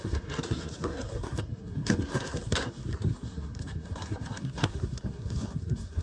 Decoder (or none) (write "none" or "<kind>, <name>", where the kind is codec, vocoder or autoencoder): codec, SNAC